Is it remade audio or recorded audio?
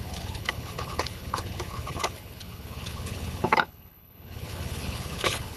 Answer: remade